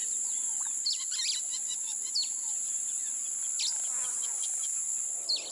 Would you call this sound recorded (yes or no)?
yes